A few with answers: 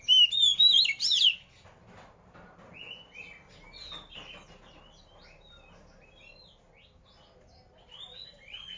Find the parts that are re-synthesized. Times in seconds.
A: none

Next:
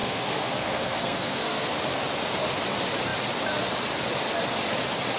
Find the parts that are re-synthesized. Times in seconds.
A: 0.0-1.7 (codec, SNAC)

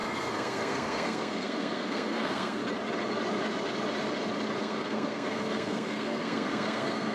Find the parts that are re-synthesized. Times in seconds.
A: 0.0-2.6 (codec, SNAC); 4.6-7.1

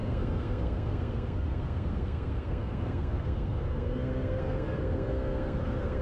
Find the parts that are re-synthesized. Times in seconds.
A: 0.0-6.0 (codec, SNAC)

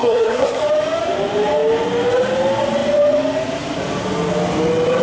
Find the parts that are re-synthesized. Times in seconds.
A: 0.0-0.6 (codec, SNAC)